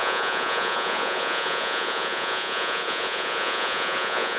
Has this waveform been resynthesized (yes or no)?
yes